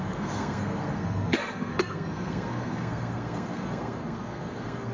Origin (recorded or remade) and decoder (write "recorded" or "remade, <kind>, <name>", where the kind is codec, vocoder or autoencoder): remade, codec, SNAC